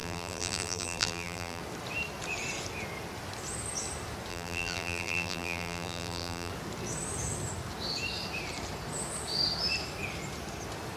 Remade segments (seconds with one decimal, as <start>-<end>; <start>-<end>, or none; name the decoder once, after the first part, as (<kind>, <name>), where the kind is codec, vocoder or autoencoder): 0.0-1.6 (vocoder, BigVGAN v2); 4.3-6.5